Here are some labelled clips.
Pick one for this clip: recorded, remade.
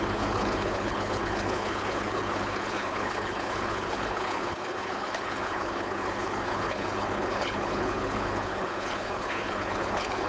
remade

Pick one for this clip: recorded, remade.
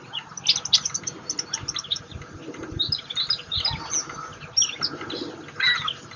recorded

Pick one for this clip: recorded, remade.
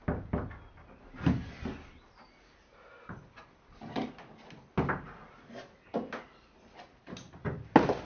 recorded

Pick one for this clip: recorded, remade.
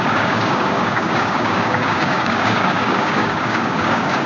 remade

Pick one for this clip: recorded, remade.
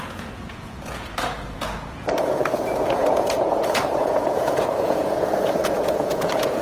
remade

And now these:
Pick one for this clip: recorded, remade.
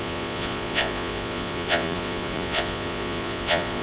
remade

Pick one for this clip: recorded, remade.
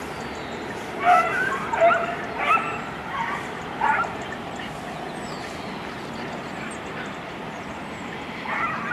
recorded